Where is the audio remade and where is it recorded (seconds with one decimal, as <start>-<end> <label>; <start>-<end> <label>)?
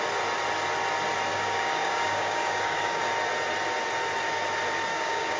0.0-1.3 recorded; 1.3-3.0 remade; 3.0-4.9 recorded; 4.9-5.4 remade